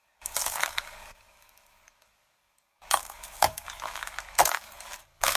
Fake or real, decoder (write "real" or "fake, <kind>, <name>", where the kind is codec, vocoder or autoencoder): fake, codec, DAC